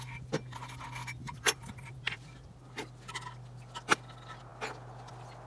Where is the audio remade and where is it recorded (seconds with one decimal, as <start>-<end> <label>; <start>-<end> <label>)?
0.0-5.5 recorded